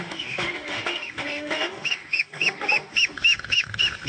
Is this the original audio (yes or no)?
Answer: no